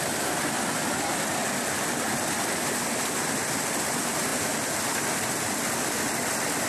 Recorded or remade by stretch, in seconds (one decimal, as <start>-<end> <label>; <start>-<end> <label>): 0.0-1.4 remade; 1.4-3.0 recorded; 3.0-6.7 remade